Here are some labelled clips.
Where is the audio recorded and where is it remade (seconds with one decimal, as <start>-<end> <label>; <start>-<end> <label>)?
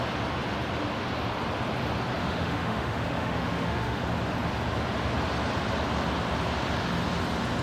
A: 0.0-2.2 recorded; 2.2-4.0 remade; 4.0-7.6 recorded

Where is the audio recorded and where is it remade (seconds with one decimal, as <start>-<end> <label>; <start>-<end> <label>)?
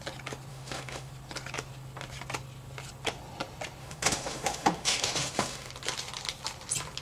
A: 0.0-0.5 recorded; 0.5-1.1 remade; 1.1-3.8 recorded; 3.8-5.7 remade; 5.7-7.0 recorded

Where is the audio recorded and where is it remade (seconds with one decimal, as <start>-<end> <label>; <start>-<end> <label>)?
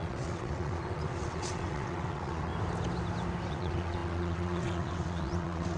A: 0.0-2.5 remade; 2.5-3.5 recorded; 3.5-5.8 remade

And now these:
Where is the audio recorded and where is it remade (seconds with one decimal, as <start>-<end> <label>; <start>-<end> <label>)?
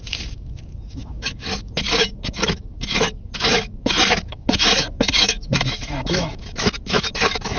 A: 0.0-7.6 remade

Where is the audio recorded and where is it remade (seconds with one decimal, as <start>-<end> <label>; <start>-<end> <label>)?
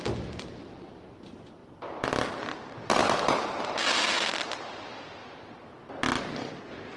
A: 0.0-7.0 recorded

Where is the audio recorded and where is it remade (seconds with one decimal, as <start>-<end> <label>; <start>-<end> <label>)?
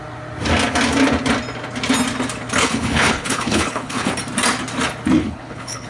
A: 0.0-2.6 recorded; 2.6-4.1 remade; 4.1-5.2 recorded; 5.2-5.9 remade